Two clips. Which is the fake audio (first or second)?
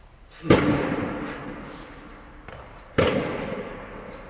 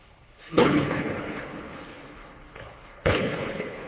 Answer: second